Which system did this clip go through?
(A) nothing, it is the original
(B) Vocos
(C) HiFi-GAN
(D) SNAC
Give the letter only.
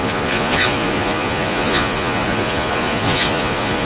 B